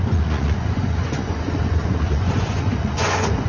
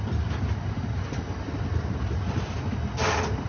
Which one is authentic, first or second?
second